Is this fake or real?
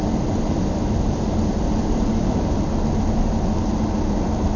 real